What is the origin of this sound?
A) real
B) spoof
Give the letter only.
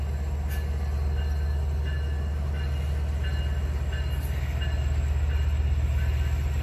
A